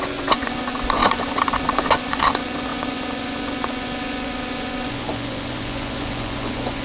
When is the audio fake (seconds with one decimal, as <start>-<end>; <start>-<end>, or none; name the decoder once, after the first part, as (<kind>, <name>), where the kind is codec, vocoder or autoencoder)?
0.0-6.8 (vocoder, Vocos)